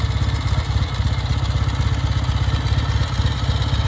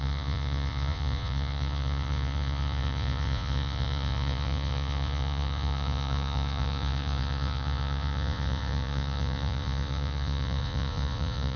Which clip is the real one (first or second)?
first